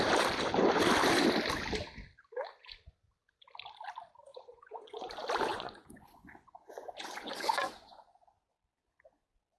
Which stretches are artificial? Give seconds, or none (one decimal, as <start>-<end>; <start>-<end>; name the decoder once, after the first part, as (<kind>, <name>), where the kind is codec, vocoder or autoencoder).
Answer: 4.3-5.1 (vocoder, Vocos); 5.5-8.1